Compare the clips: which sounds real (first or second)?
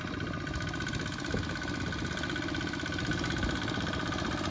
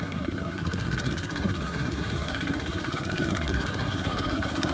first